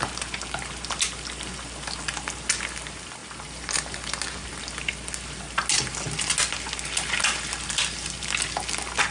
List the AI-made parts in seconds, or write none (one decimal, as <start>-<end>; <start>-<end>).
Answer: none